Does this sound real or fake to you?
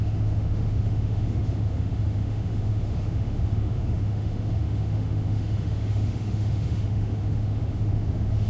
fake